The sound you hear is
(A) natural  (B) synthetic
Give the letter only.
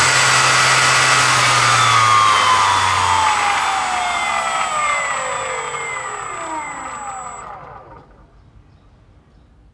A